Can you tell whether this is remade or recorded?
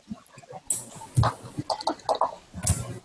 recorded